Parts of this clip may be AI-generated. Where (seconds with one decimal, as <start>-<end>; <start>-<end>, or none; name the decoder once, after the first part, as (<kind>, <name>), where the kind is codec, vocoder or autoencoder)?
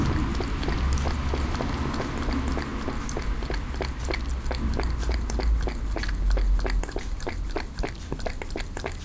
none